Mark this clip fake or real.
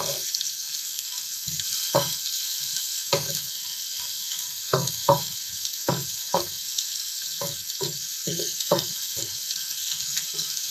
fake